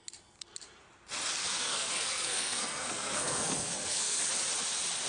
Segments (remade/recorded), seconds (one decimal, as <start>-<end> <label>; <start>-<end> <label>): 0.0-1.4 recorded; 1.4-4.2 remade; 4.2-5.1 recorded